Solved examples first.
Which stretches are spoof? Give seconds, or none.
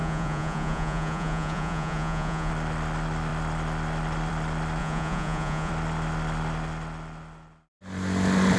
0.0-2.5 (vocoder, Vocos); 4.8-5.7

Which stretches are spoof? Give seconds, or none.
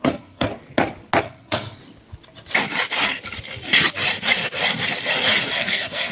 0.0-0.5 (codec, SNAC); 1.2-1.8; 5.5-6.1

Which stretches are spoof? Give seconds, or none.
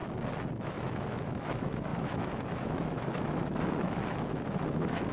0.5-5.1 (autoencoder, DAC-VAE)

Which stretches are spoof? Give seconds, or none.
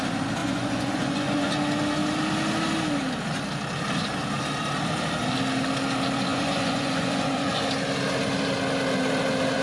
0.4-1.5 (vocoder, Vocos); 6.3-7.6